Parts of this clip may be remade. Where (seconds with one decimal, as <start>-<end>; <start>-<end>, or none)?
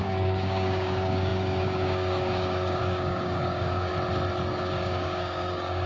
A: 0.0-3.9; 4.5-5.9